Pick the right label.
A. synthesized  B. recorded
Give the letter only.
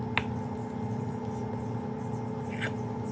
B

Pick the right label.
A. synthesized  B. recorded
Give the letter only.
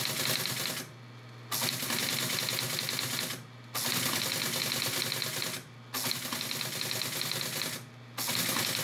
B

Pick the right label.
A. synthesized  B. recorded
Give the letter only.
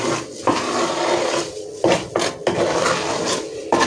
A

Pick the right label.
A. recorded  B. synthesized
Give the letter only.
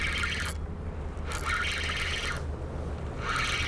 A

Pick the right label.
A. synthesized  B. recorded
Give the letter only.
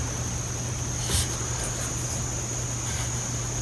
B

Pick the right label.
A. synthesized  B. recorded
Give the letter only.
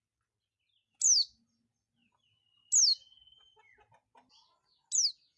B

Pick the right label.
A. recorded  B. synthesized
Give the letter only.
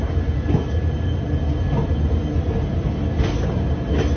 A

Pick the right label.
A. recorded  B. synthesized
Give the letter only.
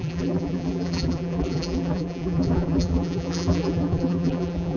B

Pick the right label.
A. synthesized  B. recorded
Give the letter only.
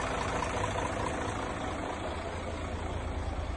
B